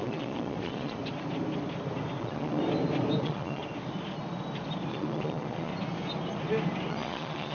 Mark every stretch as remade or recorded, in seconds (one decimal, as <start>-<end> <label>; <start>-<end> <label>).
0.0-1.0 remade; 1.0-2.2 recorded; 2.2-2.6 remade; 2.6-3.2 recorded; 3.2-3.6 remade; 3.6-4.9 recorded; 4.9-5.7 remade; 5.7-6.9 recorded; 6.9-7.5 remade